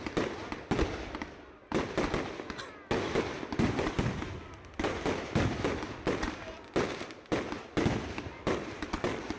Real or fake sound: real